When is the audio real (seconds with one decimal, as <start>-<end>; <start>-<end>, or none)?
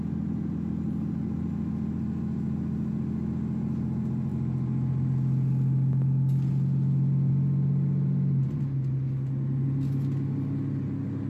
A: 0.0-11.3